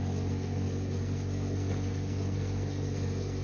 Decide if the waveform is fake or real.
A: fake